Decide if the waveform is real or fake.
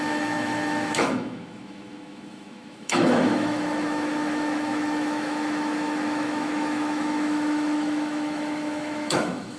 fake